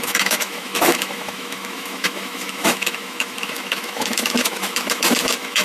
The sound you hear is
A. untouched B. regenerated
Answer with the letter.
B